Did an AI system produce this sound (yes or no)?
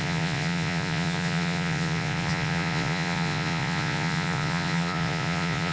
yes